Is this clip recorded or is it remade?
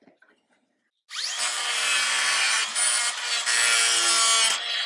recorded